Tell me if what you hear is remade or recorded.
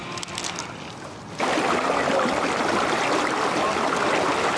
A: recorded